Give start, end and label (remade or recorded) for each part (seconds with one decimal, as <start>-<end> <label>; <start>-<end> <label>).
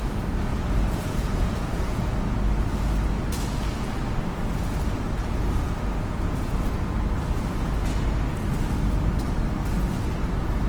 0.0-0.5 recorded; 0.5-2.4 remade; 2.4-5.2 recorded; 5.2-6.5 remade; 6.5-10.7 recorded